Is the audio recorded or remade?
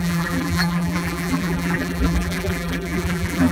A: remade